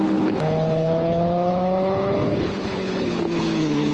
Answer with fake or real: fake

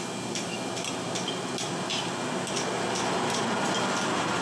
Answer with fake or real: real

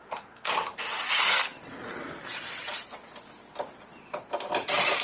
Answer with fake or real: real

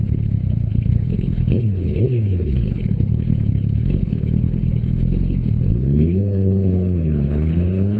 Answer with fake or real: fake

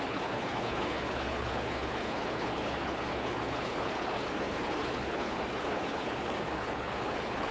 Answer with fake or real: fake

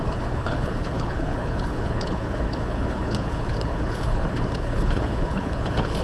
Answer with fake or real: fake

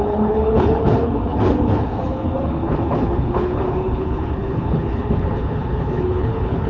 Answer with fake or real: fake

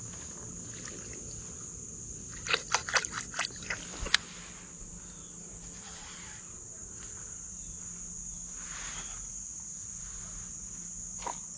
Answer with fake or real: real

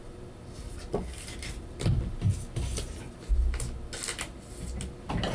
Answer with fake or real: real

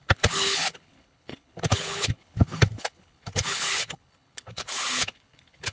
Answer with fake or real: fake